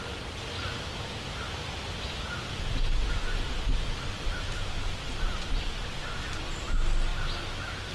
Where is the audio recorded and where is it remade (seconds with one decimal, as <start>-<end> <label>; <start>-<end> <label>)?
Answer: 0.0-7.9 recorded